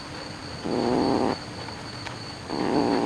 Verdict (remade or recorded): recorded